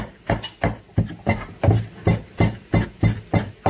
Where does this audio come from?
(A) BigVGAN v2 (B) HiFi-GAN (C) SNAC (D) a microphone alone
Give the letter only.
D